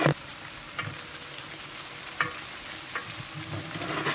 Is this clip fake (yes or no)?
no